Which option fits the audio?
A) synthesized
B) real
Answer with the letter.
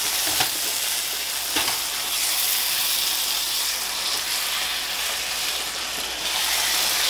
B